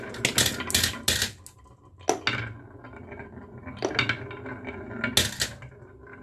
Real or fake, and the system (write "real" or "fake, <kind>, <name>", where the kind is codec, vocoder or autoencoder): real